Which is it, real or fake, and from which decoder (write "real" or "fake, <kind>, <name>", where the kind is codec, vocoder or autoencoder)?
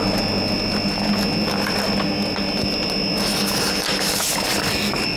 real